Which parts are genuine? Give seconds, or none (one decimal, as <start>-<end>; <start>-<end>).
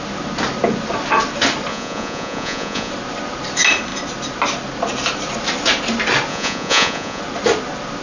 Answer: 0.0-1.7; 2.9-6.3; 7.2-8.0